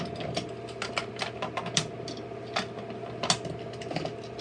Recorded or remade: recorded